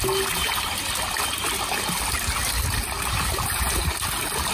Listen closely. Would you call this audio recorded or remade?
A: recorded